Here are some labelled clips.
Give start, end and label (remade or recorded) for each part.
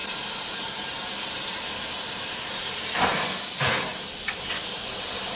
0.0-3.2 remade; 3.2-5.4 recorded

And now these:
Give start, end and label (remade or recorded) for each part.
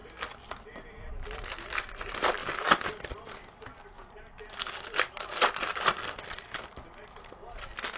0.0-1.1 remade; 1.1-2.4 recorded; 2.4-7.2 remade; 7.2-8.0 recorded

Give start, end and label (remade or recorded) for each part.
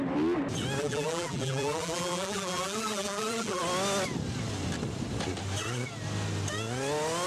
0.0-0.8 recorded; 0.8-3.6 remade; 3.6-7.3 recorded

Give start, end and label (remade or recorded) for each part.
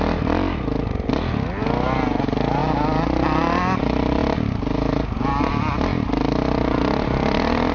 0.0-7.7 recorded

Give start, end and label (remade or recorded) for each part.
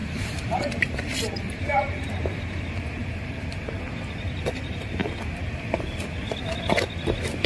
0.0-3.1 remade; 3.1-7.5 recorded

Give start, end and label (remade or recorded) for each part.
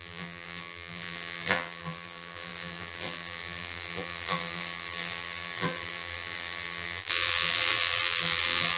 0.0-8.8 remade